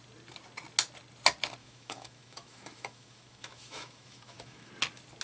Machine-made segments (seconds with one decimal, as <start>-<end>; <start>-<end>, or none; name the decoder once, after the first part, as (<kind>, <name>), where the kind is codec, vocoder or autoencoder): 1.6-4.7 (autoencoder, DAC-VAE)